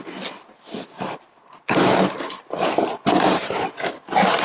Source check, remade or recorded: recorded